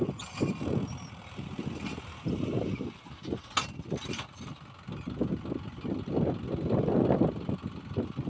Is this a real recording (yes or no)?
yes